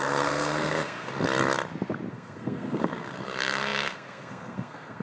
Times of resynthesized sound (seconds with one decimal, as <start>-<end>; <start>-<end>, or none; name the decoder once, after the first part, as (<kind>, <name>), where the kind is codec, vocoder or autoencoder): 0.0-1.1 (codec, SNAC); 2.1-5.0